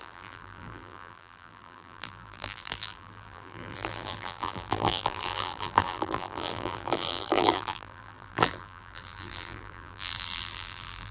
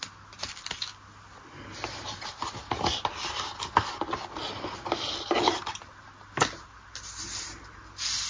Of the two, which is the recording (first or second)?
second